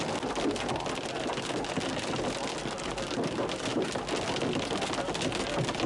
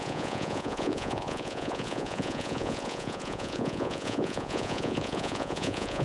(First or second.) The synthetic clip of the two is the second